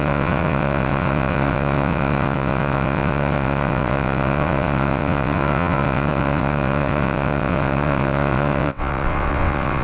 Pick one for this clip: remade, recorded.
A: remade